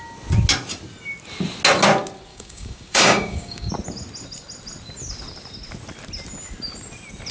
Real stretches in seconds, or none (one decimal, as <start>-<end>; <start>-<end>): 0.0-2.3; 3.7-7.3